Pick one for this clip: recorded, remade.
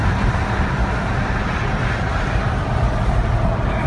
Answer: recorded